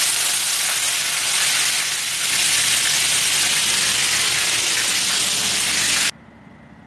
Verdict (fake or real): real